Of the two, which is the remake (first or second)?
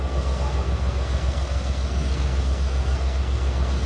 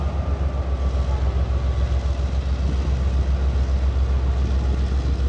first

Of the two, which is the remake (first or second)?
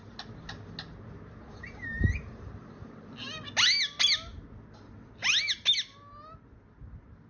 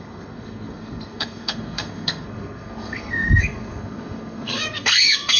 second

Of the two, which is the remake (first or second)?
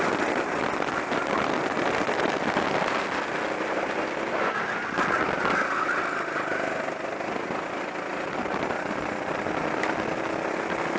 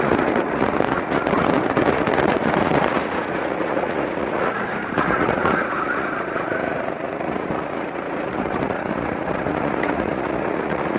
second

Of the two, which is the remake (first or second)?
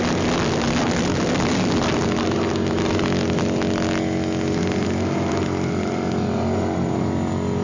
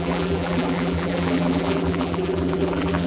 second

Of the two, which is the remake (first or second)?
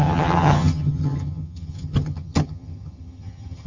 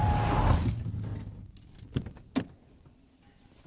first